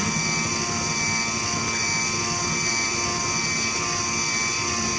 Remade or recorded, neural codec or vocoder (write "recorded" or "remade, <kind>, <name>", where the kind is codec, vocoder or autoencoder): recorded